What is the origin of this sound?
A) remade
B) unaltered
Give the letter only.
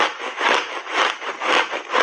B